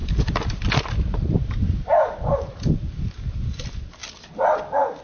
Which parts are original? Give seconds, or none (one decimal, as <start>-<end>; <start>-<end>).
0.0-5.0